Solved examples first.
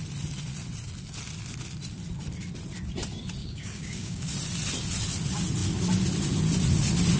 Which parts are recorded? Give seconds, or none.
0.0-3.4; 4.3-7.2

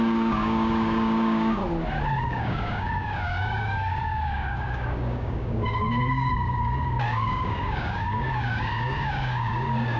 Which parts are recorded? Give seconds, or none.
1.6-2.2

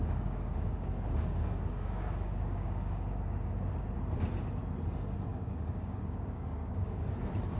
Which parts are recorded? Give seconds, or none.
3.7-5.3; 7.1-7.6

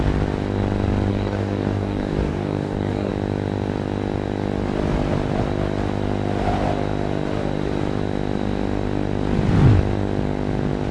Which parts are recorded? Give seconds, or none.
0.0-1.1; 3.1-10.9